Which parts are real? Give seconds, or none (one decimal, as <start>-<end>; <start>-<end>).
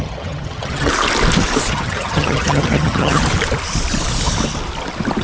0.9-1.7; 3.2-5.2